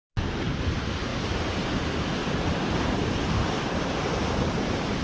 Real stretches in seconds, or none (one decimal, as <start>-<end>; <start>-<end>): 0.0-1.1; 1.7-2.2; 4.4-5.0